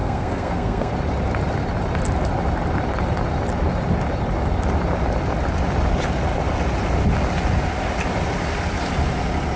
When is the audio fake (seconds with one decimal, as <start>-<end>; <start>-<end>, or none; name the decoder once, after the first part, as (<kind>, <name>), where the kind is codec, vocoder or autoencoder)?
0.0-0.9 (codec, SNAC)